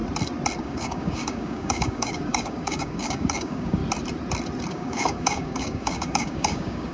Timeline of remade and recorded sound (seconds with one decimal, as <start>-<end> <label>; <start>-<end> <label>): 0.0-0.6 recorded; 0.6-3.8 remade; 3.8-4.7 recorded; 4.7-6.9 remade